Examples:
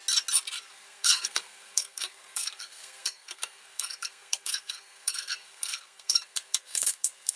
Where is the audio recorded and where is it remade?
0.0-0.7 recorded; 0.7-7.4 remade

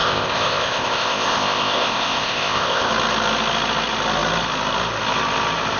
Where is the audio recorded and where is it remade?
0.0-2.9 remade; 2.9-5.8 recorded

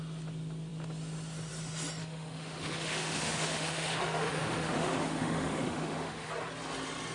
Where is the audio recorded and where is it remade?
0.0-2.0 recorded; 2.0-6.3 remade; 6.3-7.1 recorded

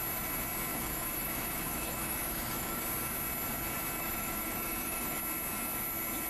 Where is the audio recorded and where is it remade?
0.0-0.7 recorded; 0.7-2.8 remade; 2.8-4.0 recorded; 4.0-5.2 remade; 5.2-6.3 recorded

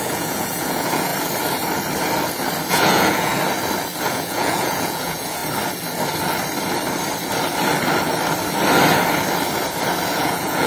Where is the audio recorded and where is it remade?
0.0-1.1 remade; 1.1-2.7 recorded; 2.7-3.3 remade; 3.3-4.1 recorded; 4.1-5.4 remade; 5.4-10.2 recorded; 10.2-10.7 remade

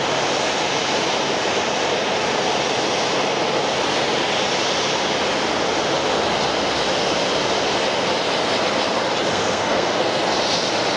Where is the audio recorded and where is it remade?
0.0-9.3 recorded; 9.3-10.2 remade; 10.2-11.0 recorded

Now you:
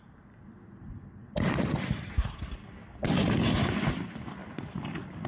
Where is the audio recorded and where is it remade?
0.0-5.3 recorded